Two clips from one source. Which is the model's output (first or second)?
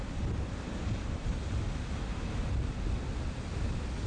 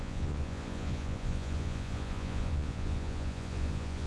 second